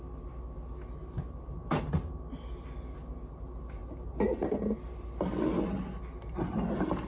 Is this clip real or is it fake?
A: real